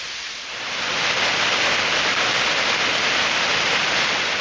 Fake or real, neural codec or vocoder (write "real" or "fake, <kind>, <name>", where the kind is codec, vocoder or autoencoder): real